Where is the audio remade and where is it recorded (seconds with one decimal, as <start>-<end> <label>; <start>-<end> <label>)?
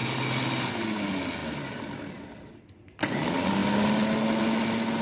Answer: 0.0-5.0 recorded